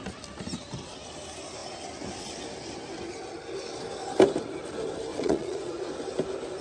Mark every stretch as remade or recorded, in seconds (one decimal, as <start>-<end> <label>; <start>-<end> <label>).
0.0-5.1 recorded; 5.1-5.9 remade; 5.9-6.6 recorded